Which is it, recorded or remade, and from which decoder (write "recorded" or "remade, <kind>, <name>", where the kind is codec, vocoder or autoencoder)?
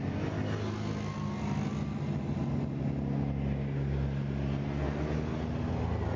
recorded